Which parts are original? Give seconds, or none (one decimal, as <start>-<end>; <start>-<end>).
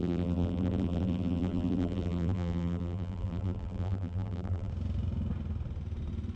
4.7-6.4